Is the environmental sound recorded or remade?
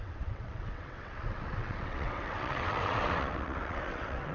remade